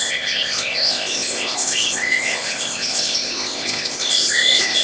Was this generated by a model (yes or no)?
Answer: yes